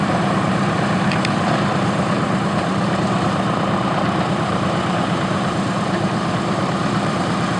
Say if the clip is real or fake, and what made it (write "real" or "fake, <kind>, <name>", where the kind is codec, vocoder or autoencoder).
fake, vocoder, BigVGAN v2